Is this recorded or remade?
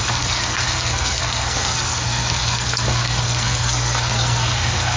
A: remade